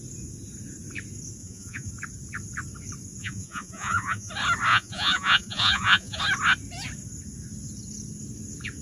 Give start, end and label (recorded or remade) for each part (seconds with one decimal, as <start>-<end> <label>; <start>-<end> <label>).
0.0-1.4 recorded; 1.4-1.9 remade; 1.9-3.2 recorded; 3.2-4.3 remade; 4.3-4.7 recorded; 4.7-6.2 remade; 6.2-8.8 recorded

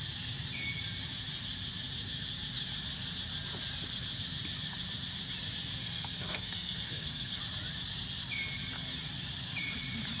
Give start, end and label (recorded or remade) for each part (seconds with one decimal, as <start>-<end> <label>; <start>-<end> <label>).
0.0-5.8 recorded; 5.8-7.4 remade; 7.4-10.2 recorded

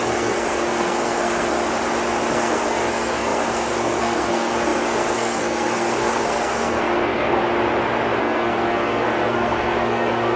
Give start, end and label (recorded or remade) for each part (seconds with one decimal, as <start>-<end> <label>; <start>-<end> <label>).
0.0-1.6 remade; 1.6-2.3 recorded; 2.3-7.4 remade; 7.4-8.2 recorded; 8.2-10.4 remade

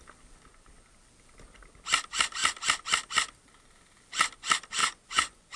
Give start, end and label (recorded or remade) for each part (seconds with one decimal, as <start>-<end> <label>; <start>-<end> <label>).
0.0-4.8 recorded; 4.8-5.6 remade